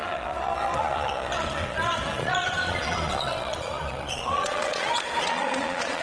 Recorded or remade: remade